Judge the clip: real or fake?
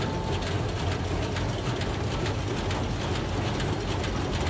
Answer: real